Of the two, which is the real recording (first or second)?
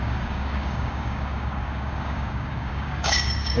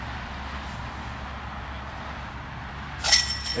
second